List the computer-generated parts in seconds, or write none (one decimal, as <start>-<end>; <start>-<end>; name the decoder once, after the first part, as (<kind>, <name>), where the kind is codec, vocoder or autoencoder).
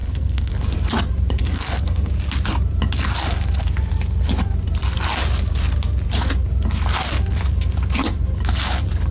0.0-0.5 (codec, SNAC); 1.4-2.1